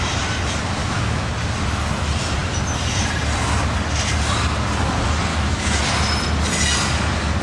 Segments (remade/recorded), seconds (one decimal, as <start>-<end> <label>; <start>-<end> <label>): 0.0-0.8 recorded; 0.8-1.3 remade; 1.3-5.3 recorded; 5.3-5.8 remade; 5.8-7.4 recorded